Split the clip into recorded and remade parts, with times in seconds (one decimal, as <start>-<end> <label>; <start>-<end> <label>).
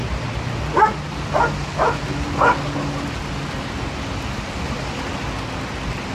0.0-6.1 recorded